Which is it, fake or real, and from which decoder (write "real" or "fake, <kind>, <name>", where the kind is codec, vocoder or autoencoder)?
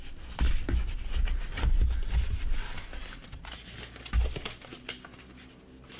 real